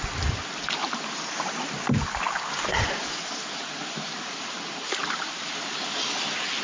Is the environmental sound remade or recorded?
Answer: recorded